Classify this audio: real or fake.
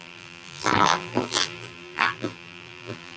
fake